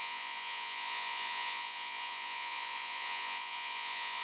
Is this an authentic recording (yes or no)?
no